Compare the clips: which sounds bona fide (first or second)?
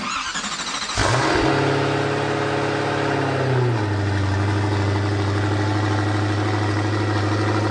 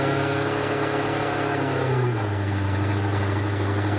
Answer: first